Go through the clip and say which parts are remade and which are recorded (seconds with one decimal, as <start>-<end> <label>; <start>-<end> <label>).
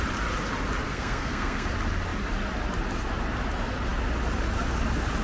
0.0-0.9 recorded; 0.9-1.7 remade; 1.7-5.2 recorded